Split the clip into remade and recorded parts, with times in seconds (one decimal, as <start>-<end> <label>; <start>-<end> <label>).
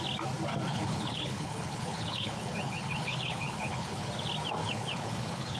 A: 0.0-0.7 recorded; 0.7-4.1 remade; 4.1-4.6 recorded; 4.6-5.6 remade